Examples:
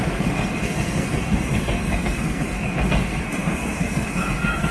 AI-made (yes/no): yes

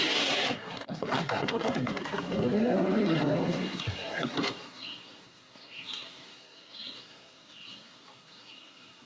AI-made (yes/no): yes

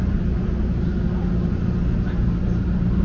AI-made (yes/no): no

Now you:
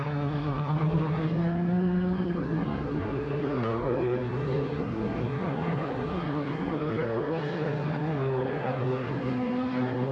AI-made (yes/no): yes